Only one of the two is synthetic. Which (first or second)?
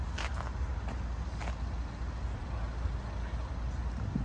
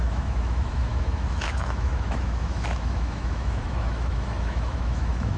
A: second